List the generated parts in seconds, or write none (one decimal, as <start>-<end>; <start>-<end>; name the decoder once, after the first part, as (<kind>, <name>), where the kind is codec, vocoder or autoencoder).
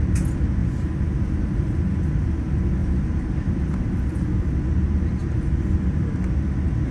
0.6-1.9 (vocoder, BigVGAN v2); 2.8-3.5